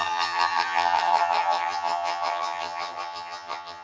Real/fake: fake